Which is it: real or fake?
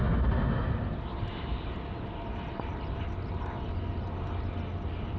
real